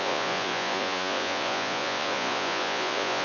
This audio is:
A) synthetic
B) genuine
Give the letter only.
A